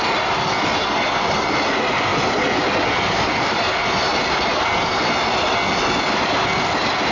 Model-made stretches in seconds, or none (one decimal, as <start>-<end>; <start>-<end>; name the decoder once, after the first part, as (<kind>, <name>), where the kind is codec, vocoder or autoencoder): none